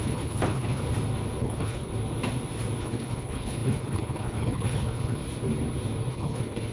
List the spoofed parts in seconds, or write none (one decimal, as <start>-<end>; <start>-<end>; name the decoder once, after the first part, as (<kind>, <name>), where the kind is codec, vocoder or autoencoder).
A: 0.0-0.8 (codec, HILCodec); 1.4-1.9; 2.8-5.2; 6.1-6.7